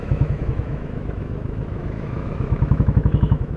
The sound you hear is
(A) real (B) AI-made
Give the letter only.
B